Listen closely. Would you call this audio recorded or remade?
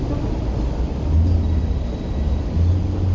recorded